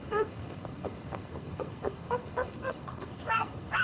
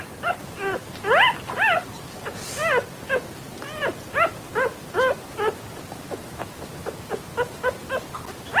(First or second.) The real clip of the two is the second